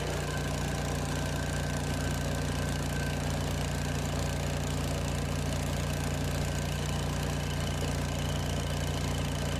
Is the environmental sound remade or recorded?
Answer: recorded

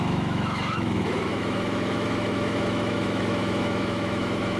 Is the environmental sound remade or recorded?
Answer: remade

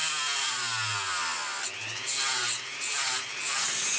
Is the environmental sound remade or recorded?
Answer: recorded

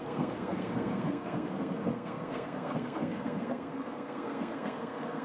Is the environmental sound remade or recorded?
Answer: remade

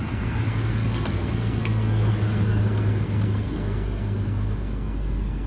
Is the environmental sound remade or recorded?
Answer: remade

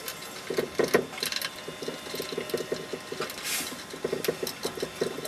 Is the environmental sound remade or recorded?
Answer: recorded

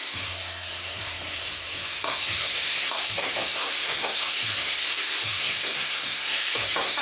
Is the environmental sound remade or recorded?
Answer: remade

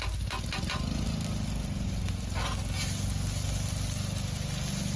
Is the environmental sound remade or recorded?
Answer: recorded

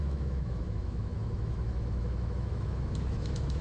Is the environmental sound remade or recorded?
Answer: remade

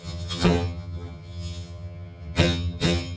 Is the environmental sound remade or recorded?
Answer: remade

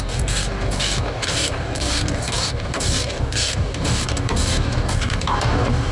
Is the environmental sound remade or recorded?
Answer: remade